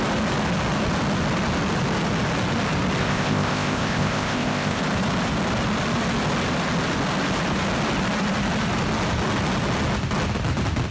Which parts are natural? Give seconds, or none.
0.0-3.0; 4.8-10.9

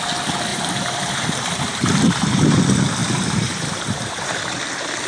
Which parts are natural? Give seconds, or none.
0.0-0.5; 2.6-3.0; 4.5-5.1

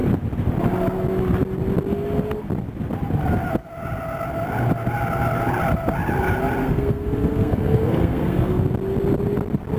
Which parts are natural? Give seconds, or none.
0.0-6.6; 8.6-9.8

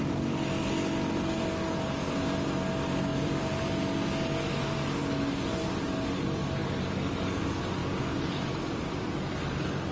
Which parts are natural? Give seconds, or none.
0.0-3.1; 3.7-7.8; 8.5-9.9

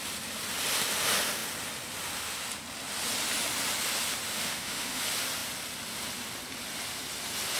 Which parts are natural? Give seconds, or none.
0.0-4.3; 5.0-7.6

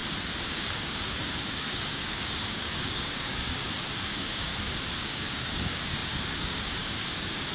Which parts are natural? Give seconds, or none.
0.0-0.5; 3.6-4.1; 4.5-5.0

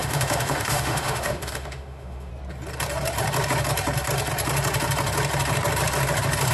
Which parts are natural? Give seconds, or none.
2.3-6.5